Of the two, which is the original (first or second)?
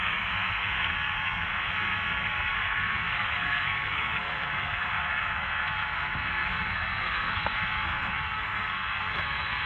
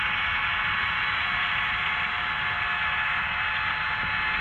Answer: second